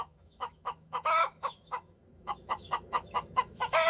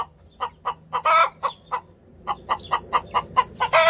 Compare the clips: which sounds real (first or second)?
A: second